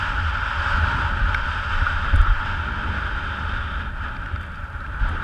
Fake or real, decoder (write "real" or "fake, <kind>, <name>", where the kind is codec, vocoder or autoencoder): real